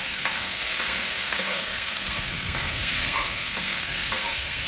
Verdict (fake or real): fake